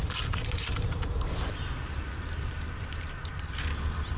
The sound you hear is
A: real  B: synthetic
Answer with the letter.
B